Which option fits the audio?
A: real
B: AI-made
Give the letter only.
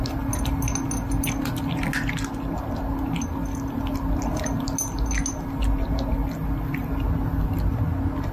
A